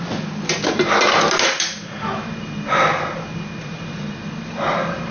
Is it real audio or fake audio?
real